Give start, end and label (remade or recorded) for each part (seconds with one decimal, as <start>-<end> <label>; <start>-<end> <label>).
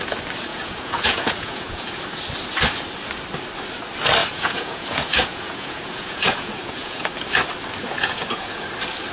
0.0-0.5 recorded; 0.5-2.0 remade; 2.0-4.2 recorded; 4.2-7.1 remade; 7.1-7.8 recorded; 7.8-8.6 remade; 8.6-9.1 recorded